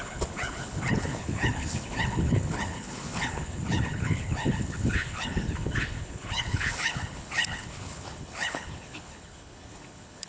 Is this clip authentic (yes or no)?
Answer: no